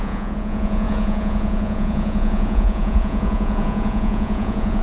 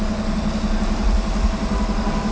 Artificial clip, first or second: first